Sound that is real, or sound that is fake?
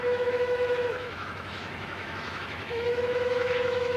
fake